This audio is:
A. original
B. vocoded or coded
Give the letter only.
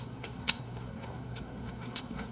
B